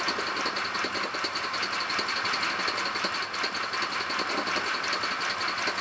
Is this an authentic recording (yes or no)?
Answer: yes